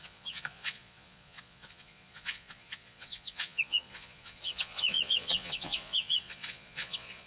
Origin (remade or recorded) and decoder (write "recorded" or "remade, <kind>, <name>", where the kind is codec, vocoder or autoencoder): remade, vocoder, Vocos